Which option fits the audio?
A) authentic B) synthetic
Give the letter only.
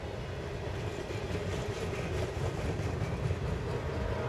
A